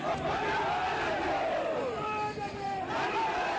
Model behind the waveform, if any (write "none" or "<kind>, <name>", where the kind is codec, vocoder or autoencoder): none